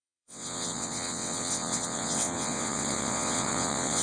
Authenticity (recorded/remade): remade